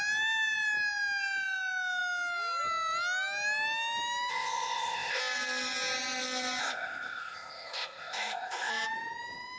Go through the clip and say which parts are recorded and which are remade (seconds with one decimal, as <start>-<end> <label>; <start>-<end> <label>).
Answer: 0.0-4.3 recorded; 4.3-5.2 remade; 5.2-6.6 recorded; 6.6-8.7 remade; 8.7-9.6 recorded